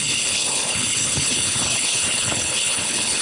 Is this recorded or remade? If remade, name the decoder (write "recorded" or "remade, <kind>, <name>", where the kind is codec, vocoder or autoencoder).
remade, codec, HILCodec